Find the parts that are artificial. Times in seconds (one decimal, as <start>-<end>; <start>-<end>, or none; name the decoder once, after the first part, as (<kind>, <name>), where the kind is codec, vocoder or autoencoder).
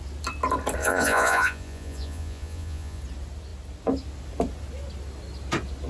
0.8-3.0 (vocoder, Vocos)